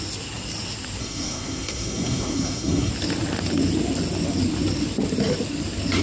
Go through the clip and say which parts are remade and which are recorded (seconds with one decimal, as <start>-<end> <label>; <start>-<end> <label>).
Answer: 0.0-1.0 recorded; 1.0-2.9 remade; 2.9-6.0 recorded